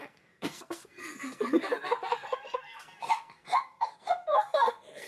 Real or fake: fake